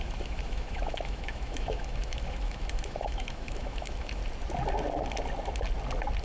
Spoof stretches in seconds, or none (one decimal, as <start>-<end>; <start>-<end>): 0.0-4.2